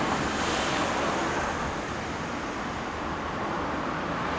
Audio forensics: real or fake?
real